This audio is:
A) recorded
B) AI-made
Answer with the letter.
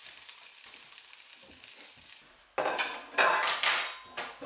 A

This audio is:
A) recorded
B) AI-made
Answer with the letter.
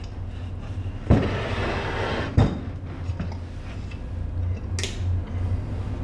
A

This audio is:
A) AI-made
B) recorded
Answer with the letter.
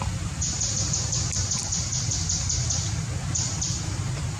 B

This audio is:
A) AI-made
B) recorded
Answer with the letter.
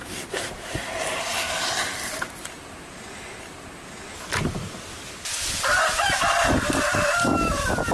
B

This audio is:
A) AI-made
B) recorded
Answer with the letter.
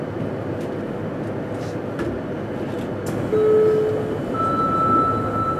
B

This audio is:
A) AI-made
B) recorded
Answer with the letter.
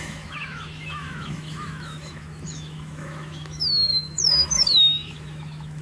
A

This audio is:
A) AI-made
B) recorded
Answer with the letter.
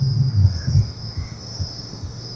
A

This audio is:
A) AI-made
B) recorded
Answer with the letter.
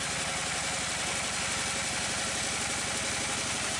B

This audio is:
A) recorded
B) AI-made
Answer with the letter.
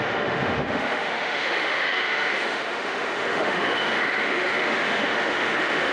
B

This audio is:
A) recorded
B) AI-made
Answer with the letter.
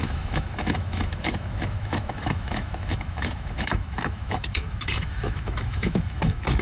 B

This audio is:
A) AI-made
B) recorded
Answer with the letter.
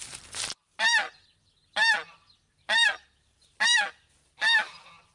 B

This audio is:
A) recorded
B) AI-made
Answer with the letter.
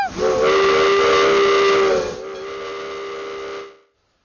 A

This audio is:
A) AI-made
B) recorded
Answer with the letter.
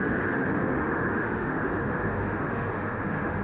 A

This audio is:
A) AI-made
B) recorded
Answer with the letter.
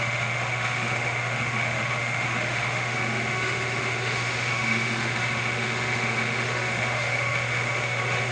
A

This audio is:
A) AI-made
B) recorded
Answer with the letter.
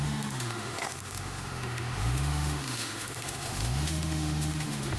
A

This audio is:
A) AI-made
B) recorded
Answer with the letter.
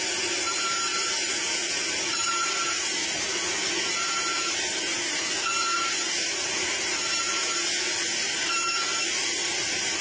B